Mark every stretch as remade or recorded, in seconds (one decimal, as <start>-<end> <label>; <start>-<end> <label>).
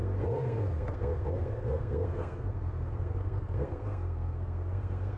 0.0-5.2 remade